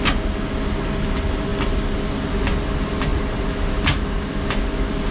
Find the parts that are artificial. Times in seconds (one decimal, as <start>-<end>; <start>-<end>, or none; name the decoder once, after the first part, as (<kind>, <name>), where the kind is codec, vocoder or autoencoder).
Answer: none